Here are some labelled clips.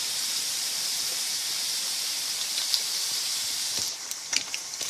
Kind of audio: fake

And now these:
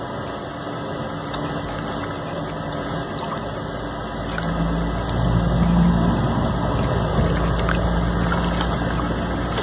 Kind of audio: real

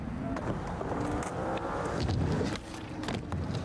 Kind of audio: real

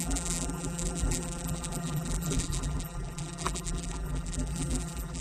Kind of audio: fake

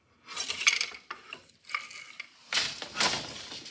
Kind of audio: real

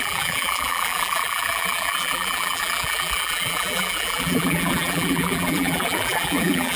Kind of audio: fake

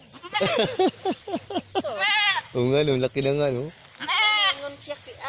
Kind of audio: real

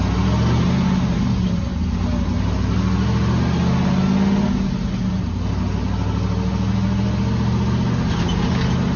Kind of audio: real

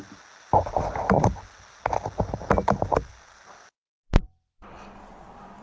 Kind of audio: real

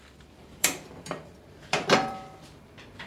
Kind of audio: fake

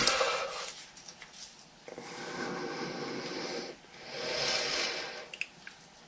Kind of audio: real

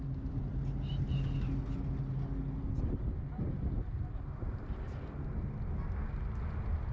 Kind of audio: real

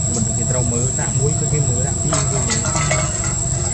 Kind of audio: real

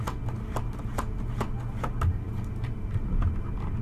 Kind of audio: real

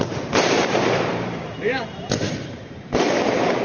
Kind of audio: fake